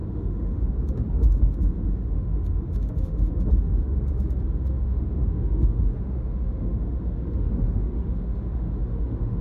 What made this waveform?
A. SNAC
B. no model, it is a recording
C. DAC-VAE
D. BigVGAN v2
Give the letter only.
C